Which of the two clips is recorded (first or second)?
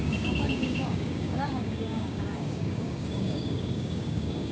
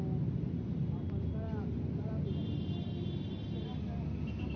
second